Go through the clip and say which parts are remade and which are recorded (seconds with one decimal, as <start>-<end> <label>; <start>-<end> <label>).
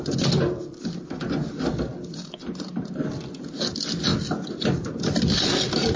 0.0-6.0 recorded